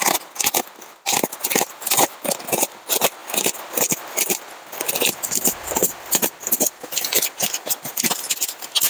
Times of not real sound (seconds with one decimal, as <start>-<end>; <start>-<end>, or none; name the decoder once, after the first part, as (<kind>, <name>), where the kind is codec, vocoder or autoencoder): none